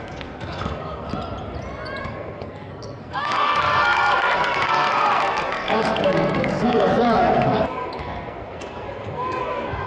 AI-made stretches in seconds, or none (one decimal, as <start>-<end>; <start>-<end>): 0.0-1.1; 2.0-9.9